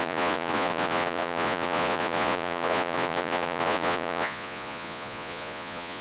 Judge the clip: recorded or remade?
remade